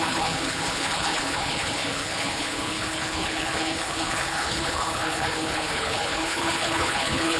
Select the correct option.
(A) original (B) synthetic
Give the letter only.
B